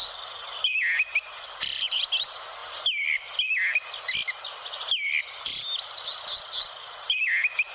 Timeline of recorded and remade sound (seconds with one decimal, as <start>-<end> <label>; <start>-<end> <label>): 0.0-7.7 recorded